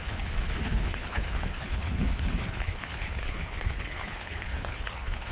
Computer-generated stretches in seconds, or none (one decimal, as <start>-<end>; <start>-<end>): 0.0-5.3